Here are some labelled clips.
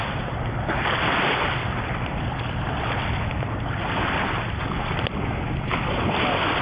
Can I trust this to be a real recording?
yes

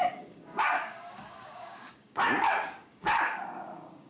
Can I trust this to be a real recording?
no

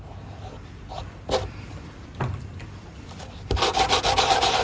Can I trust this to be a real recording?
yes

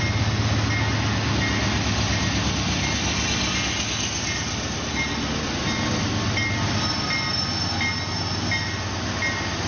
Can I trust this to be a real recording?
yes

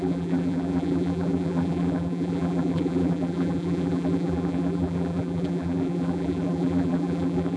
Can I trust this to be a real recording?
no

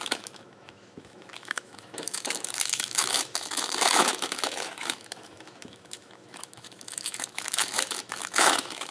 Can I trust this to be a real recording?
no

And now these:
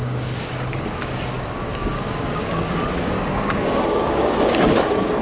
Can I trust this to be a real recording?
no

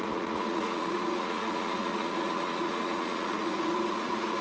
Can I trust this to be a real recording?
no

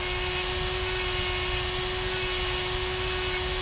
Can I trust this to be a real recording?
yes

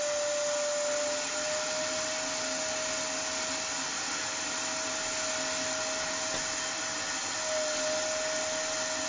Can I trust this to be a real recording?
yes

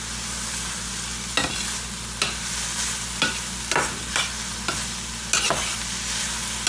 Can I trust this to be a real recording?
yes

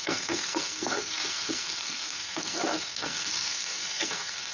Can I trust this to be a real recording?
no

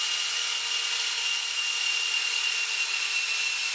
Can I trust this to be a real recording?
yes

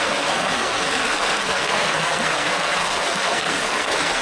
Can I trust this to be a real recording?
no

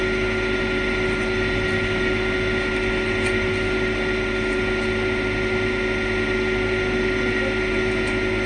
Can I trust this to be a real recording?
yes